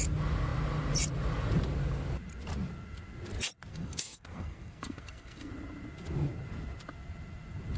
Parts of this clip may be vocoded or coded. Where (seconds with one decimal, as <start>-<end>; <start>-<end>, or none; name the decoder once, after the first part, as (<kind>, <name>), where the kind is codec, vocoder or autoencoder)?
3.7-5.5 (codec, SNAC)